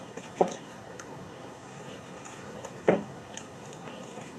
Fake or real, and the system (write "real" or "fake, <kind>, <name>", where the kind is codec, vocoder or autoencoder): fake, codec, SNAC